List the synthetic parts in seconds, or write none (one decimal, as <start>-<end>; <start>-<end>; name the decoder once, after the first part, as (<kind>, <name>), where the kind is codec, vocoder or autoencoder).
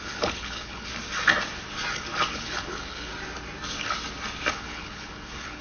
0.0-0.9 (codec, HILCodec); 2.3-3.1; 4.5-5.6